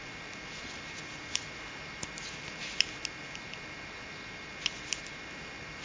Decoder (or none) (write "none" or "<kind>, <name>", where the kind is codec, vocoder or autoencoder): none